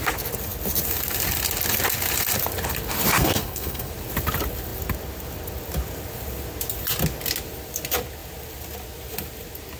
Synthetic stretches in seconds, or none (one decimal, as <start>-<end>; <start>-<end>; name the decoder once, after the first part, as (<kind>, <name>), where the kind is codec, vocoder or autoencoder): 3.2-3.9 (codec, SNAC)